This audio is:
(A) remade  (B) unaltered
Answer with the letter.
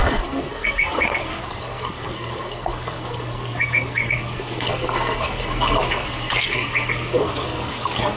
A